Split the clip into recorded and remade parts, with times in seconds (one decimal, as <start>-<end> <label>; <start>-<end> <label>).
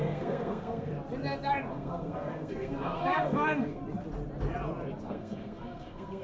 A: 0.0-0.9 remade; 0.9-1.7 recorded; 1.7-3.8 remade; 3.8-5.0 recorded; 5.0-6.2 remade